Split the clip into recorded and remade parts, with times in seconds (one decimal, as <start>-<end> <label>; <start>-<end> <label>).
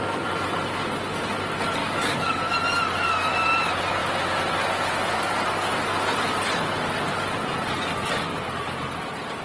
0.0-1.8 recorded; 1.8-2.4 remade; 2.4-9.4 recorded